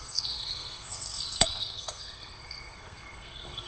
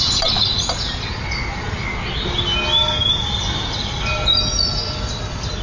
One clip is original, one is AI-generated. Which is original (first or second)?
second